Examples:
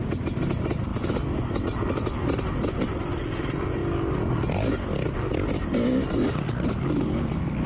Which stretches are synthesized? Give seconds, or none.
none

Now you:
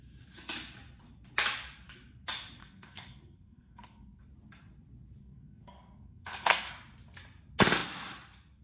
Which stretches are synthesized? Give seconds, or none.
2.6-4.2; 5.2-6.7

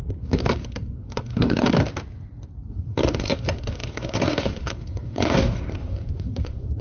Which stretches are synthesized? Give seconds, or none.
0.0-1.8; 2.7-6.8

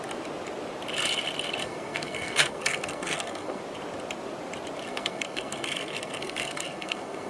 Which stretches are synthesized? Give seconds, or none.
1.6-3.6; 4.9-7.3

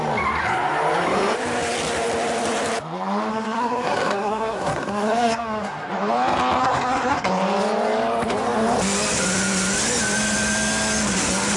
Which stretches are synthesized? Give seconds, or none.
3.3-5.9; 6.6-7.3

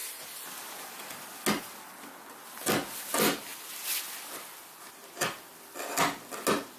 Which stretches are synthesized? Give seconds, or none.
none

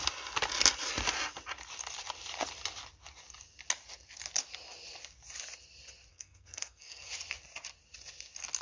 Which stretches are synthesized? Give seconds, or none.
6.1-7.1

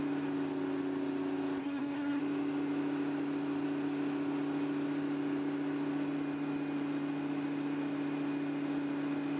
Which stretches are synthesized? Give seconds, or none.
1.6-2.2